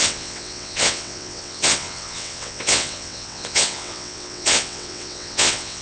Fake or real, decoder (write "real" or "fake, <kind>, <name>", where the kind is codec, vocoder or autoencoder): fake, vocoder, WaveNeXt